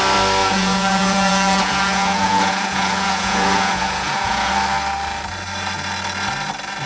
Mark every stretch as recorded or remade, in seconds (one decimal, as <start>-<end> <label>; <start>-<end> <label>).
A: 0.0-0.4 recorded; 0.4-4.5 remade; 4.5-6.9 recorded